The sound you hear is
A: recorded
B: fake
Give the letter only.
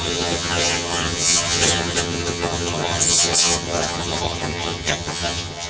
B